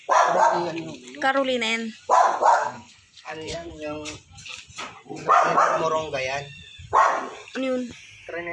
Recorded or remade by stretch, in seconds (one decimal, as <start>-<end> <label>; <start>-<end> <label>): 0.0-2.5 recorded; 2.5-3.7 remade; 3.7-8.5 recorded